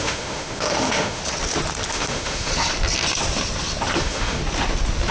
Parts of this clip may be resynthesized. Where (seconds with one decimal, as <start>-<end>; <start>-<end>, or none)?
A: 0.0-1.2; 1.9-2.5; 4.0-4.4